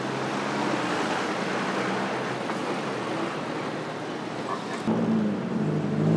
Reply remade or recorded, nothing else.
recorded